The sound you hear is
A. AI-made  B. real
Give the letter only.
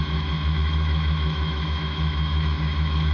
A